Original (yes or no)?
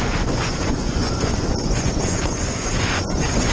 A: no